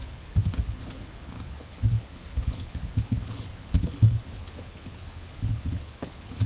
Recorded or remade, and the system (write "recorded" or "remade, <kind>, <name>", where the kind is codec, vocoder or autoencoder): remade, codec, HILCodec